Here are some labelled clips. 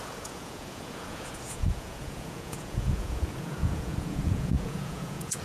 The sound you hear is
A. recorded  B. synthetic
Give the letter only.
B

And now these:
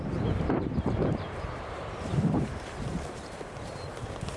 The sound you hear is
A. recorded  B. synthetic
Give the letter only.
B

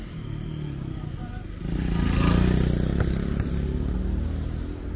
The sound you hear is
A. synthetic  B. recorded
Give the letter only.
B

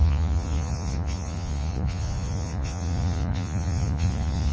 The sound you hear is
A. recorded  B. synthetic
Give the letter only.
B